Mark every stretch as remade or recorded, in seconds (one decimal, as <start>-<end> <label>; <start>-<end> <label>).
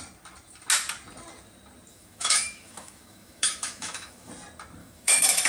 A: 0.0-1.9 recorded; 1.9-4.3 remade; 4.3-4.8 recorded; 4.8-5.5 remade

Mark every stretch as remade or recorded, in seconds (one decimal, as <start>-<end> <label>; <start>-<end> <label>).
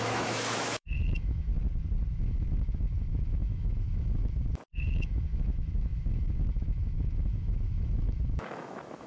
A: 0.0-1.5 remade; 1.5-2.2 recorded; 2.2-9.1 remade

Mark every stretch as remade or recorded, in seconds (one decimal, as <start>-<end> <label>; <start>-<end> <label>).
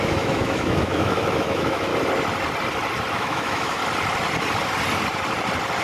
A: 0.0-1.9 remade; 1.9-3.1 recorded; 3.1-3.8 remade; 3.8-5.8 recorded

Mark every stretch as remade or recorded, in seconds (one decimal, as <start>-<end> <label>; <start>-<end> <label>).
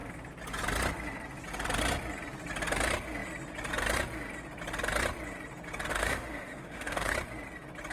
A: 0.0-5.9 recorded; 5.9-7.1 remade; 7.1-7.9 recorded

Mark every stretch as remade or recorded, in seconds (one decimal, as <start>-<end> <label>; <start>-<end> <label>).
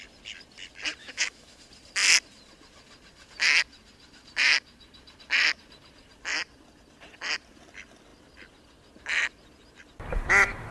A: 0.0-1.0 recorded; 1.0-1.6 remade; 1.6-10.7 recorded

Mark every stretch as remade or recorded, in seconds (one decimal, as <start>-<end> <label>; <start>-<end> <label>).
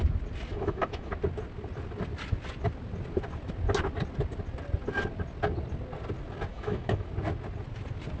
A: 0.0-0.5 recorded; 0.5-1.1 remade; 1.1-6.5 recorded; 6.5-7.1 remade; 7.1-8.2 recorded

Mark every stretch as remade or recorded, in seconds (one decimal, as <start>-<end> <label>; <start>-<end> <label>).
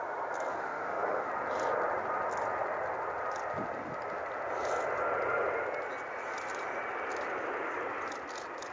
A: 0.0-0.5 recorded; 0.5-1.3 remade; 1.3-8.7 recorded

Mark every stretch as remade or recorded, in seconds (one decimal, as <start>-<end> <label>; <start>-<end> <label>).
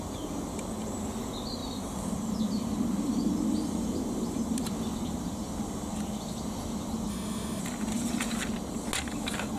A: 0.0-7.1 recorded; 7.1-7.6 remade; 7.6-9.6 recorded